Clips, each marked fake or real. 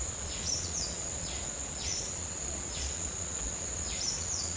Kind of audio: fake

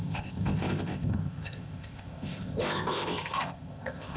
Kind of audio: fake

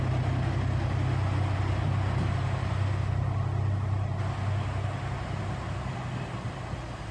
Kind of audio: real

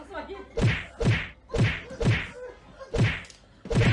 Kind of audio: real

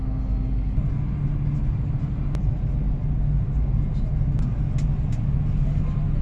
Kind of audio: real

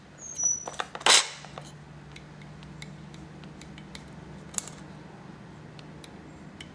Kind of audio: real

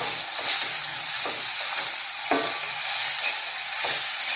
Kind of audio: real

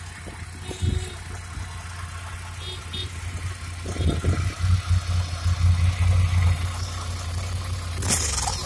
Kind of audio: real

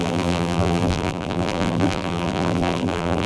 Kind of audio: fake